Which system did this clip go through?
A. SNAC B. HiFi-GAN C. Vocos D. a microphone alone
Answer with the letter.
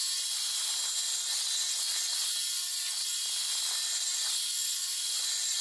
D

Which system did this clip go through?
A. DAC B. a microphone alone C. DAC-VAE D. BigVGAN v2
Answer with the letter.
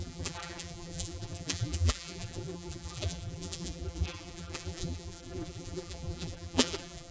D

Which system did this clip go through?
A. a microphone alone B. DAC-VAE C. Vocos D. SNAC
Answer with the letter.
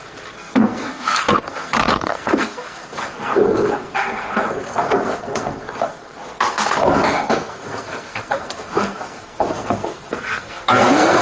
D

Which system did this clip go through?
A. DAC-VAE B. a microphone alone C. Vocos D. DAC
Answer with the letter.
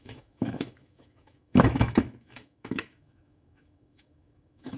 A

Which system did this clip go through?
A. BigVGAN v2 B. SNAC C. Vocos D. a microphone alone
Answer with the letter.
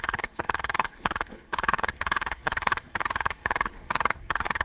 B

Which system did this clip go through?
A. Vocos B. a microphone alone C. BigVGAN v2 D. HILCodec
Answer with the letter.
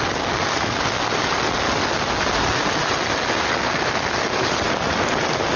B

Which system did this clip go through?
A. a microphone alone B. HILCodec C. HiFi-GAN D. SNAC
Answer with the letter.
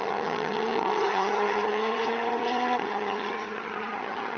C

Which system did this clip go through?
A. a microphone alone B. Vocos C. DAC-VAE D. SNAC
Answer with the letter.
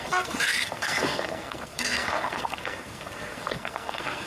D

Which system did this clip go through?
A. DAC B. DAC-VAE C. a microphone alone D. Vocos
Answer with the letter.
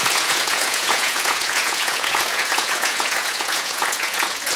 D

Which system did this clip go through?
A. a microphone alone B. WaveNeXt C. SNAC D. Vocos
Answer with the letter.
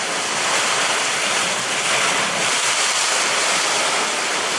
A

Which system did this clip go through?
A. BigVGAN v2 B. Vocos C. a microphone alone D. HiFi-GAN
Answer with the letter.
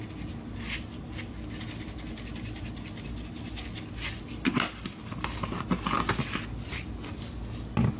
C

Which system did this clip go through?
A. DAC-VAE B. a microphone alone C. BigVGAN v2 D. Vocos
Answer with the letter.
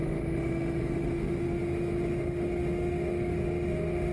A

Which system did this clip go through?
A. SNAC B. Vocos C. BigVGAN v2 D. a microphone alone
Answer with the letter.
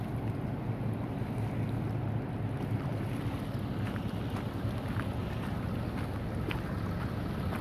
D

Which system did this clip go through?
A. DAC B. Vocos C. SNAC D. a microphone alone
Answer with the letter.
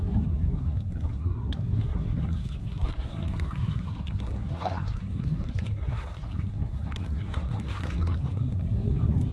C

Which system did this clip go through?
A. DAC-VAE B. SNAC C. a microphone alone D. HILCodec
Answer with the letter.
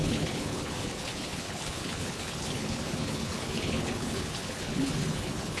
D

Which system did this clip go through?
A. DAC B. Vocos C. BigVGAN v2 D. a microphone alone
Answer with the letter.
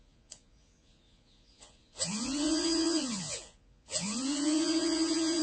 B